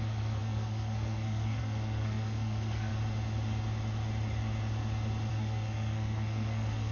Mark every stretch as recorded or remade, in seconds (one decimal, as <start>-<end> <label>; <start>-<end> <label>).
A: 0.0-2.9 remade; 2.9-5.3 recorded; 5.3-6.9 remade